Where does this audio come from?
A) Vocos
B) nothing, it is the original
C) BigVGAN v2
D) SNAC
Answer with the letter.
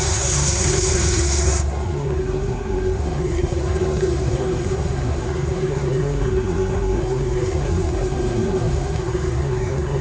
D